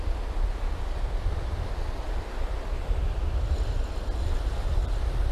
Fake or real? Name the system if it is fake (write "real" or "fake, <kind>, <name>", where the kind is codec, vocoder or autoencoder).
real